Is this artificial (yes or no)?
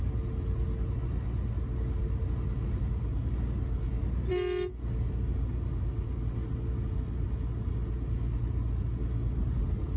no